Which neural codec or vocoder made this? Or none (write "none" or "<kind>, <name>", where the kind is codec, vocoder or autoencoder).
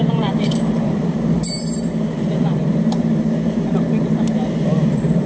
vocoder, BigVGAN v2